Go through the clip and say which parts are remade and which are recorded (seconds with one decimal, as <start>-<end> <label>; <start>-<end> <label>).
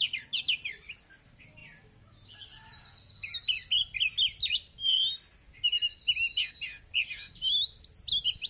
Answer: 0.0-8.5 recorded